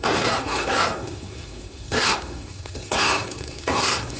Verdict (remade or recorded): remade